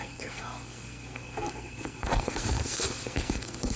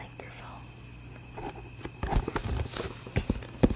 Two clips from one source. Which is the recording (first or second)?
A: second